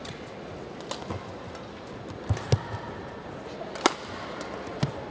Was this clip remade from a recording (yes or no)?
no